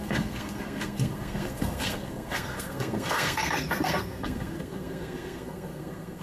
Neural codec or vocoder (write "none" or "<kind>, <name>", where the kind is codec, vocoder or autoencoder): codec, SNAC